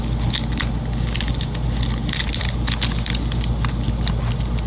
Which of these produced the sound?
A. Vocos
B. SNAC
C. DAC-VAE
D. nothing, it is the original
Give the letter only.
D